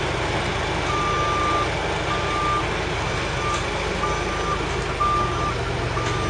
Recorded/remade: recorded